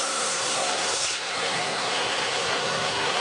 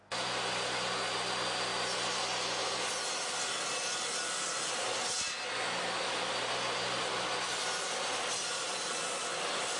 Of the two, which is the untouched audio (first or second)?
second